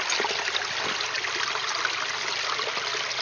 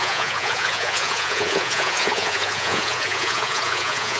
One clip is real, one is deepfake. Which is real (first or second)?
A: first